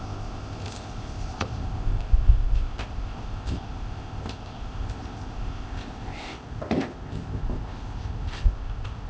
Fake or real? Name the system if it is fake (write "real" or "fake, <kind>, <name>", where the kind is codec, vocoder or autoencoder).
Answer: fake, codec, ZipCodec